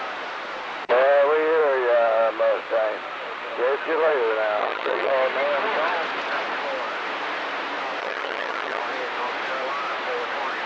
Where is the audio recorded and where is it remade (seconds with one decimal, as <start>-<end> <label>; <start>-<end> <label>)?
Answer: 0.0-4.6 recorded; 4.6-5.1 remade; 5.1-8.0 recorded; 8.0-8.8 remade; 8.8-10.7 recorded